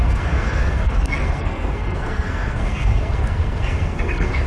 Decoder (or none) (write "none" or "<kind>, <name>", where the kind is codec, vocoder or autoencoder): codec, SNAC